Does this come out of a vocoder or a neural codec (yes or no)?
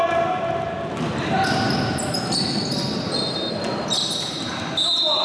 no